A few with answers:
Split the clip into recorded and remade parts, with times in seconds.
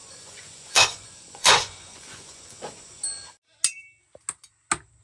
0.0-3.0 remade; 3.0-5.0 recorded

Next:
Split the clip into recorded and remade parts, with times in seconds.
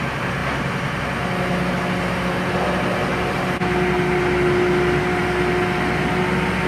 0.0-6.7 recorded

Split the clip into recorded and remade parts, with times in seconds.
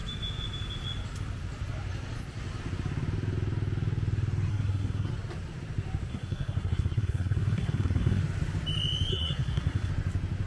0.0-4.5 recorded; 4.5-5.1 remade; 5.1-6.1 recorded; 6.1-8.2 remade; 8.2-9.1 recorded; 9.1-9.9 remade; 9.9-10.5 recorded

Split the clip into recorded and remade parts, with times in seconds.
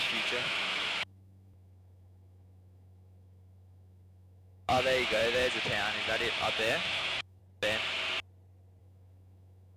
0.0-5.2 remade; 5.2-6.3 recorded; 6.3-7.4 remade; 7.4-8.8 recorded; 8.8-9.8 remade